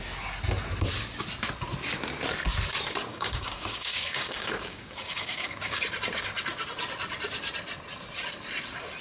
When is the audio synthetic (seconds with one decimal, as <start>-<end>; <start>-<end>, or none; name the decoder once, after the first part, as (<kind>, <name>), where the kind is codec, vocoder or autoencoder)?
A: 3.1-5.8 (codec, DAC)